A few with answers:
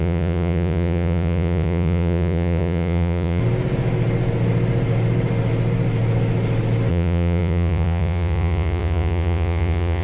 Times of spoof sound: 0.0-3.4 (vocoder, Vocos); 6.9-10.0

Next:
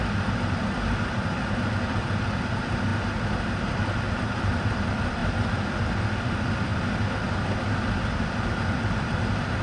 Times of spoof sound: 0.0-2.9 (vocoder, BigVGAN v2); 3.5-6.7; 8.4-9.6

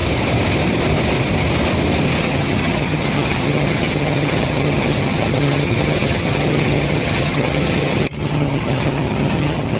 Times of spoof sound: 2.2-9.8 (vocoder, HiFi-GAN)